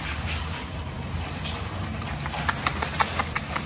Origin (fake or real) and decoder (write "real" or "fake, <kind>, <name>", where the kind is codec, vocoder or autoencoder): real